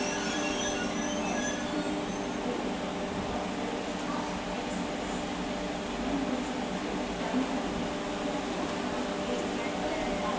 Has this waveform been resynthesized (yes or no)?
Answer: no